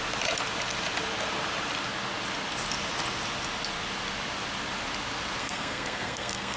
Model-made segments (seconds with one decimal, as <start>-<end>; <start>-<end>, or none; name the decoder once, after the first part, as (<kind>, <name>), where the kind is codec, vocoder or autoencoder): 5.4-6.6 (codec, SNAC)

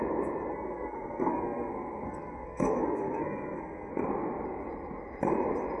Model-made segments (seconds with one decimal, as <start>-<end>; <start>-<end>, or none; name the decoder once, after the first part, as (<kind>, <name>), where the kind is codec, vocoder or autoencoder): 0.5-3.9 (codec, SNAC)

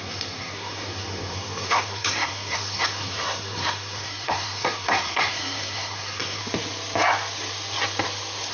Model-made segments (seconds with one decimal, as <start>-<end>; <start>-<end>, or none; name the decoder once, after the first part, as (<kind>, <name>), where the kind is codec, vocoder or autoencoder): 0.0-6.4 (codec, SNAC)

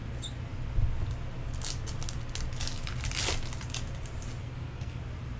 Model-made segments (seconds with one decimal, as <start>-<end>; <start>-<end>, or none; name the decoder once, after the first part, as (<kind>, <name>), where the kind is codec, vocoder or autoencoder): 4.4-5.0 (codec, SNAC)

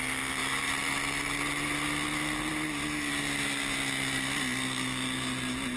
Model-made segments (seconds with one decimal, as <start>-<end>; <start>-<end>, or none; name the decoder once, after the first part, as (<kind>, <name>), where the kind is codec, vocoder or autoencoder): none